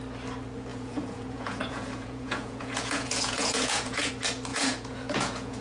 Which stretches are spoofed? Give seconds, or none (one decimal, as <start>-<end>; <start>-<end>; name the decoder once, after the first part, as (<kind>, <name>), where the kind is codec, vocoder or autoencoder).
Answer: 0.7-4.1 (vocoder, Vocos); 4.5-5.6